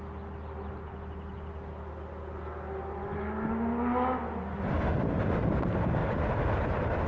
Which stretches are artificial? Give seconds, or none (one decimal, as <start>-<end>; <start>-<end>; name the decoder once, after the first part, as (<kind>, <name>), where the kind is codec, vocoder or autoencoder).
6.0-7.1 (vocoder, BigVGAN v2)